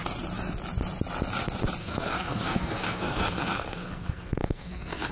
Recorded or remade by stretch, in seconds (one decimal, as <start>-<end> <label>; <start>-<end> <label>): 0.0-1.8 recorded; 1.8-5.1 remade